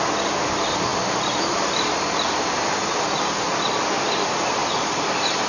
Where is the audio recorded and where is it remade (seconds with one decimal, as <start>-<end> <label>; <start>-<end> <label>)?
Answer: 0.0-5.5 recorded